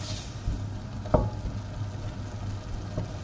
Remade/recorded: recorded